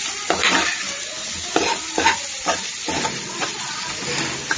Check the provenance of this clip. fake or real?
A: real